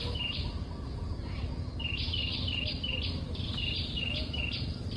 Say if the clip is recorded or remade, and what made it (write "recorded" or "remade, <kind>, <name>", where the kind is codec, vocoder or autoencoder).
recorded